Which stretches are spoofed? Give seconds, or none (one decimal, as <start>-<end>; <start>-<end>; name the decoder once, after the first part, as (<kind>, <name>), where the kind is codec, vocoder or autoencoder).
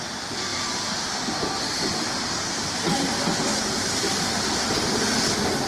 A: 3.5-4.4 (vocoder, BigVGAN v2)